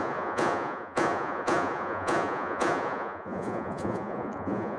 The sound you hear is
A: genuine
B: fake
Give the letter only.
B